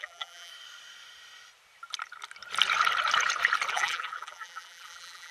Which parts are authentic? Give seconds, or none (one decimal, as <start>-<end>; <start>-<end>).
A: 0.5-3.7